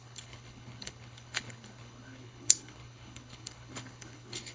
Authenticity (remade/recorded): remade